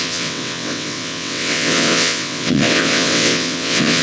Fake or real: fake